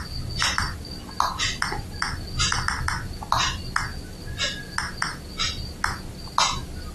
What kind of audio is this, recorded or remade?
recorded